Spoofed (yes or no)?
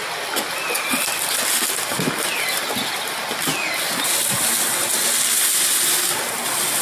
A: no